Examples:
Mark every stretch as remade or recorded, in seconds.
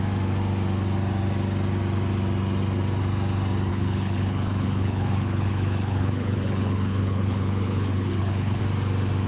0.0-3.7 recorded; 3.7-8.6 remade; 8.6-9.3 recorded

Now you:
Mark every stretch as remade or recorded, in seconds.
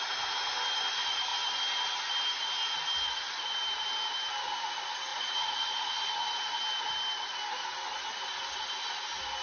0.0-5.1 recorded; 5.1-6.1 remade; 6.1-9.4 recorded